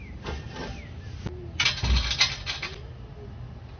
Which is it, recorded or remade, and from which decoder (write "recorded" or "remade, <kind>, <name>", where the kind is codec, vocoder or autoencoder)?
recorded